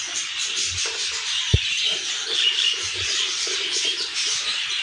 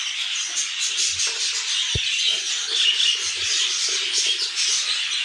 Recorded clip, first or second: second